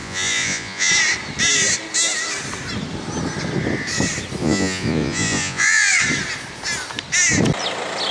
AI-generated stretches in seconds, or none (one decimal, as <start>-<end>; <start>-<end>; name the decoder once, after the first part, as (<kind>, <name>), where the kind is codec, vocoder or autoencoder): 0.0-0.9 (vocoder, Vocos); 4.4-5.9